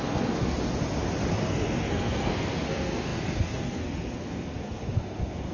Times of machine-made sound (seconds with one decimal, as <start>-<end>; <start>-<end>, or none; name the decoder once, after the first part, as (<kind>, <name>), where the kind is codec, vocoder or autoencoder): 0.0-0.5 (codec, SNAC); 1.3-5.5